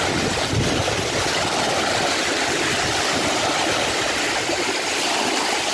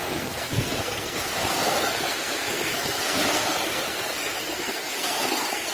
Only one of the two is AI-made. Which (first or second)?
second